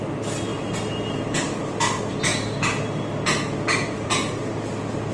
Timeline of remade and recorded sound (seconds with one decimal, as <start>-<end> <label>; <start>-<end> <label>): 0.0-0.5 recorded; 0.5-1.8 remade; 1.8-5.1 recorded